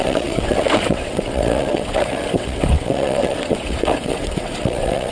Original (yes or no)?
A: no